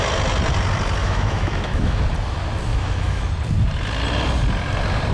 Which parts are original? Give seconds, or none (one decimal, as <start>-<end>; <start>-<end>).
0.0-1.0; 2.0-2.7; 3.3-5.1